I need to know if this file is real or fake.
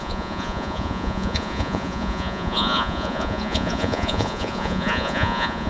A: fake